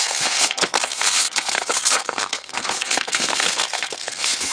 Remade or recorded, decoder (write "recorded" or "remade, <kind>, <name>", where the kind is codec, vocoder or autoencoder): remade, codec, SNAC